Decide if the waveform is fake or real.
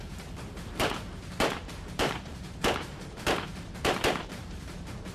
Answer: fake